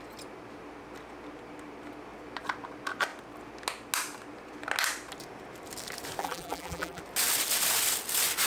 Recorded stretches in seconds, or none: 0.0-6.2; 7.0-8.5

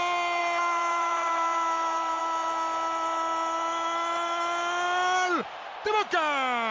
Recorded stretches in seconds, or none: 0.0-0.4; 2.2-6.7

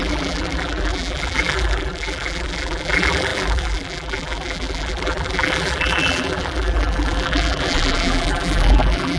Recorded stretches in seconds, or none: none